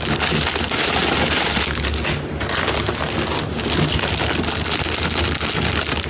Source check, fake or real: real